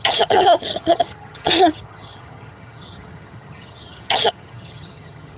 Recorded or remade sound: remade